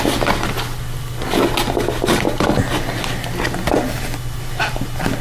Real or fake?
real